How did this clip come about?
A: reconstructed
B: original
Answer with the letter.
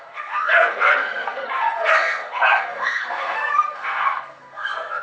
A